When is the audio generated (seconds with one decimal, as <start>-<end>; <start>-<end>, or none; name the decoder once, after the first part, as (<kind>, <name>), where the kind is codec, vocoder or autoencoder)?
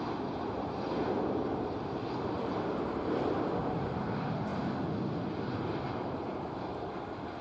none